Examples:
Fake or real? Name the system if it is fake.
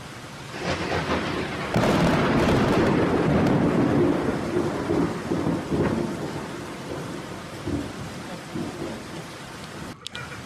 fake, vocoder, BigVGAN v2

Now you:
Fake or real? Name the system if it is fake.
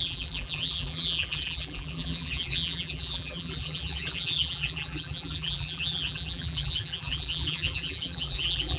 fake, vocoder, BigVGAN v2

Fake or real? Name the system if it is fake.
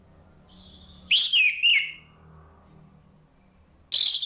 real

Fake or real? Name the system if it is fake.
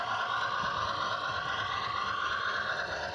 real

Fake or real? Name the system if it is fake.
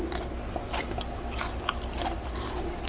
fake, vocoder, BigVGAN v2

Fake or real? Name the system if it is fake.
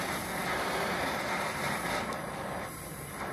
fake, vocoder, BigVGAN v2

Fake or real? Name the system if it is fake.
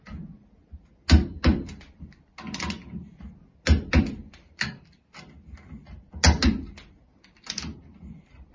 real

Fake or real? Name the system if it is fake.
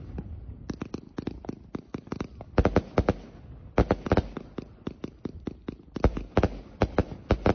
real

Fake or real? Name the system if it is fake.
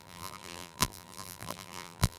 fake, vocoder, BigVGAN v2